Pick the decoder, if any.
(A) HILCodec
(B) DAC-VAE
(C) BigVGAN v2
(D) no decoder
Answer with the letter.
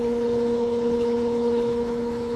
A